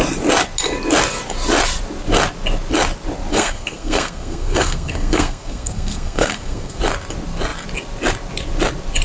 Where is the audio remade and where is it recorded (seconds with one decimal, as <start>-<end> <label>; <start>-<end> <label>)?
0.0-3.3 recorded; 3.3-6.8 remade; 6.8-9.0 recorded